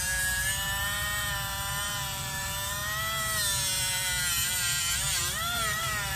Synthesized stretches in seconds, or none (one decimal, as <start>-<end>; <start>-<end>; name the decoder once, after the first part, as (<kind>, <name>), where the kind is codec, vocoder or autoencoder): 0.0-2.8 (vocoder, BigVGAN v2); 4.3-6.2